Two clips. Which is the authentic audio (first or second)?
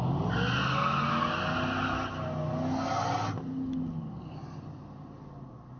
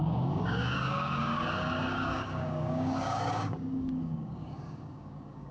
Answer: first